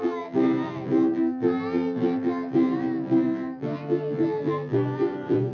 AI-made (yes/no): yes